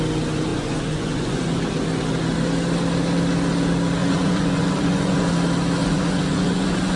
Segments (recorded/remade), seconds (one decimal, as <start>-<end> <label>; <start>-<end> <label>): 0.0-0.5 recorded; 0.5-1.6 remade; 1.6-4.0 recorded; 4.0-5.3 remade; 5.3-5.8 recorded; 5.8-7.0 remade